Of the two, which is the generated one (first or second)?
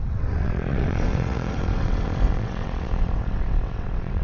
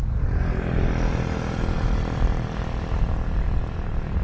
first